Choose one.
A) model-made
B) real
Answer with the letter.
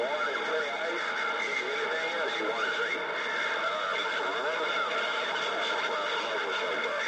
B